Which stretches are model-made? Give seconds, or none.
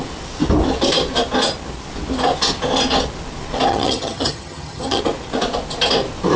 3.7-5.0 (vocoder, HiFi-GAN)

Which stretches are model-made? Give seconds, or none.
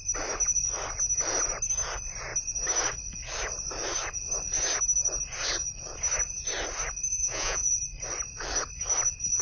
7.1-7.7 (vocoder, Vocos)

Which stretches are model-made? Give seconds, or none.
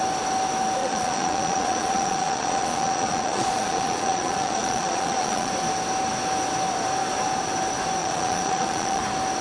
0.8-5.5 (vocoder, Vocos); 8.0-9.0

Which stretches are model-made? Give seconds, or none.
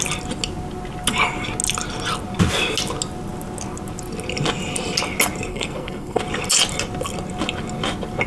5.5-6.2 (codec, SNAC)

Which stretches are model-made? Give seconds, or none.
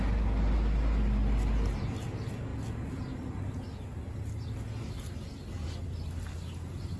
none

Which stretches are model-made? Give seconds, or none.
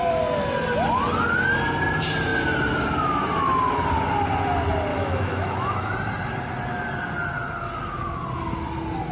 4.9-5.9 (autoencoder, DAC-VAE)